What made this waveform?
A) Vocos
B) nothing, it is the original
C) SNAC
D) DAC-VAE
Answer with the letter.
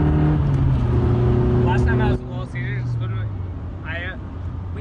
B